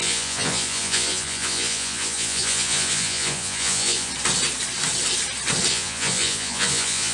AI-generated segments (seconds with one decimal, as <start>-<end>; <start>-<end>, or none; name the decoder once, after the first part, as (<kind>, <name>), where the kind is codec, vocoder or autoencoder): 0.0-4.1 (vocoder, Vocos); 5.7-7.1